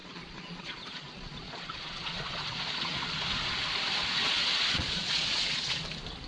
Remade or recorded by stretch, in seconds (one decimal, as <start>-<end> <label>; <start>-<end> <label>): 0.0-3.5 remade; 3.5-4.0 recorded; 4.0-5.8 remade; 5.8-6.3 recorded